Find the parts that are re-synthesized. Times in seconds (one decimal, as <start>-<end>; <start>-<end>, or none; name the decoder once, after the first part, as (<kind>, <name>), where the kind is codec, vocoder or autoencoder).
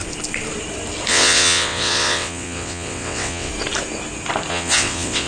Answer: 1.1-3.5 (vocoder, WaveNeXt); 4.5-5.3